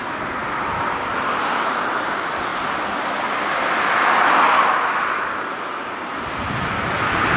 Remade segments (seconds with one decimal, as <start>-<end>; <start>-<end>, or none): 0.4-1.9